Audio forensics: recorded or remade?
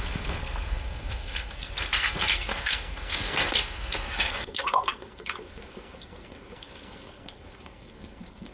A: remade